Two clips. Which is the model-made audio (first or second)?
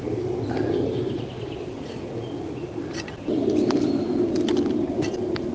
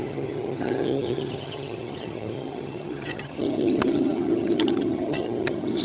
second